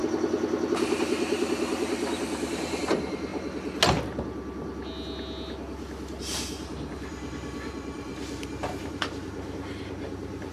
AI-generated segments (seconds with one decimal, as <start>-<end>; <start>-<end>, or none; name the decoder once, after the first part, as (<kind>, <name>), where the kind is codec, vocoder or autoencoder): 0.7-3.3 (vocoder, BigVGAN v2); 6.2-8.1; 8.9-10.5